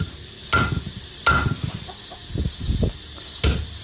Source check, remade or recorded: recorded